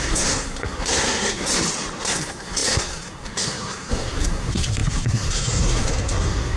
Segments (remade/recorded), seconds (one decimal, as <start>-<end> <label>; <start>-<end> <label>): 0.0-1.5 remade; 1.5-2.0 recorded; 2.0-6.6 remade